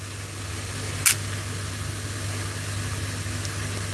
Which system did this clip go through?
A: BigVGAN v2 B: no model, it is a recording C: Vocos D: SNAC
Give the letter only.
B